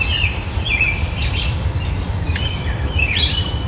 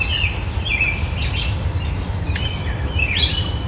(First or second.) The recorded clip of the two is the second